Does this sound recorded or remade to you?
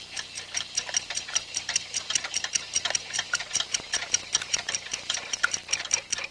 remade